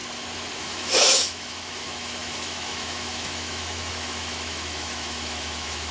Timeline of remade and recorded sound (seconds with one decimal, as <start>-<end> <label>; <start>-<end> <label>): 0.0-0.6 recorded; 0.6-5.9 remade